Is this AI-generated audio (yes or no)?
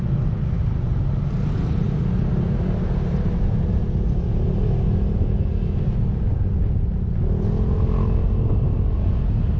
no